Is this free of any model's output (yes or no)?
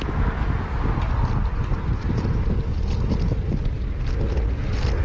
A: yes